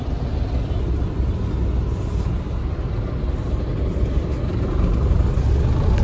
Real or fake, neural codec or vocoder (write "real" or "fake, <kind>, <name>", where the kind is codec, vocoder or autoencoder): real